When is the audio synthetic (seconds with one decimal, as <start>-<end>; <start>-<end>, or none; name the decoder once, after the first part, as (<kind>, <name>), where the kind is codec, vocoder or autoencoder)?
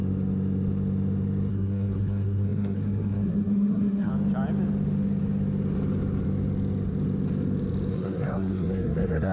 1.5-4.1 (codec, SNAC); 7.9-9.3